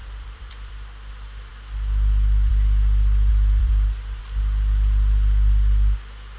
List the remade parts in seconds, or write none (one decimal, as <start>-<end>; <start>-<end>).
0.0-0.7; 3.3-4.2